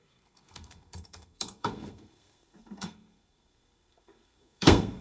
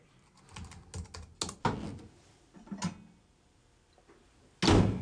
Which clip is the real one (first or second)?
second